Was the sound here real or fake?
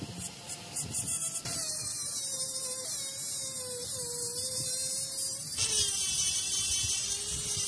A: real